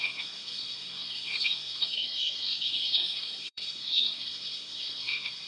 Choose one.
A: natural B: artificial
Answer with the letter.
B